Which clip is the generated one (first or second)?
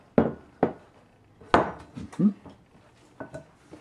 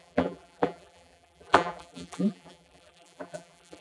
second